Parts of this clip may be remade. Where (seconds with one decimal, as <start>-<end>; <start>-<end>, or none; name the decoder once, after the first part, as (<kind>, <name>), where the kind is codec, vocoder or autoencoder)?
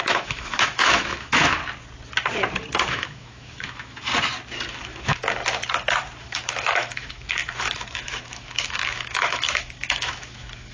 0.0-1.6 (autoencoder, DAC-VAE); 2.9-4.1; 4.7-5.4; 6.2-10.7